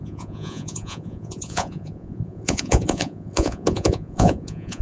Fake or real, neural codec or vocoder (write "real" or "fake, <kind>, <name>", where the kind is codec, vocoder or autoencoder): fake, vocoder, Vocos